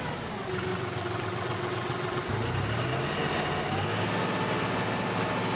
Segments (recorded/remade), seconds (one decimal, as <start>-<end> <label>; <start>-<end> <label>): 0.0-0.7 recorded; 0.7-2.3 remade; 2.3-5.6 recorded